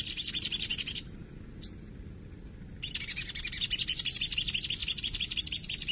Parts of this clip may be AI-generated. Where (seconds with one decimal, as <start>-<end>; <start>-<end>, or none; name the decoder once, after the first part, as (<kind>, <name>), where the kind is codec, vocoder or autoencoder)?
none